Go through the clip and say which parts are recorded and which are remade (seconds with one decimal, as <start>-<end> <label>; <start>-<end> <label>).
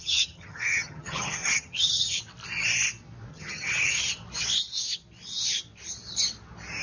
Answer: 0.0-2.2 remade; 2.2-3.3 recorded; 3.3-4.1 remade; 4.1-6.8 recorded